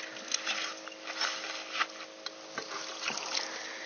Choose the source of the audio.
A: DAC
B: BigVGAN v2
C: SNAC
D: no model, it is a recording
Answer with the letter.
D